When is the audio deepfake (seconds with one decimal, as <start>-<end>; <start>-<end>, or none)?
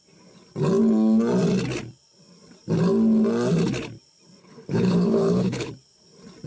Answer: 4.4-5.7